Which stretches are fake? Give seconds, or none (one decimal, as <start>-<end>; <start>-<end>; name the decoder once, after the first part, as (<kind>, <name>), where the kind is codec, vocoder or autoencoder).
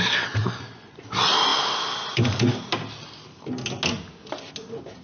0.4-1.0 (vocoder, Vocos)